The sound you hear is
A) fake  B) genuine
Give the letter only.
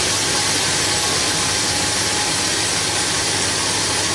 B